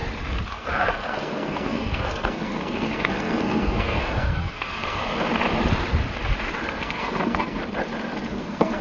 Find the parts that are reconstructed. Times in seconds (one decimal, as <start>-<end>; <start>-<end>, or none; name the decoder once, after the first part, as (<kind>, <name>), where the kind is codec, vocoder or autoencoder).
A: 0.5-5.0 (codec, SNAC); 6.8-7.6; 8.3-8.8